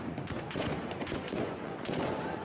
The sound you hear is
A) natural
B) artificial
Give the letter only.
B